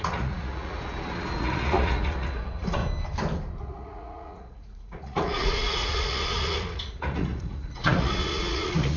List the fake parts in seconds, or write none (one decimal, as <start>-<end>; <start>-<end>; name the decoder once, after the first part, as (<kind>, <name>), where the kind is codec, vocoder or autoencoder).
0.0-2.8 (vocoder, Vocos); 3.6-9.0